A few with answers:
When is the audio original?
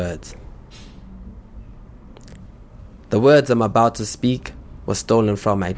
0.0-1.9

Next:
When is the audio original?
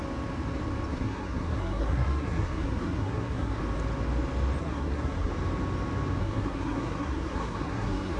0.0-0.9; 3.6-4.6; 5.3-6.2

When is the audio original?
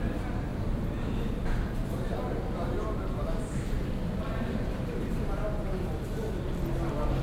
0.0-7.2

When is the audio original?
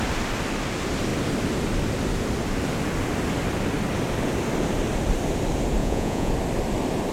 0.0-5.8; 6.3-7.1